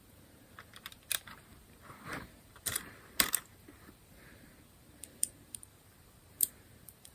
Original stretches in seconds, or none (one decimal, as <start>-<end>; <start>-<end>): none